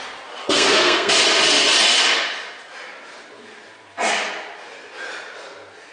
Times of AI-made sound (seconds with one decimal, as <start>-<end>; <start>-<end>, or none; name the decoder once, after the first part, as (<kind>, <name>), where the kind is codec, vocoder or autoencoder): 0.4-1.1 (codec, SNAC)